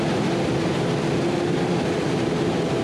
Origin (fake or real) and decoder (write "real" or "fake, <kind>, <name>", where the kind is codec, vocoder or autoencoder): real